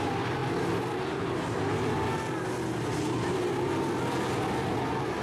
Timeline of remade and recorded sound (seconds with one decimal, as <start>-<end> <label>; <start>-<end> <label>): 0.0-5.2 recorded